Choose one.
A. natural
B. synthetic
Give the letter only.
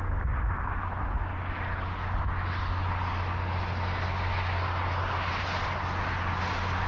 A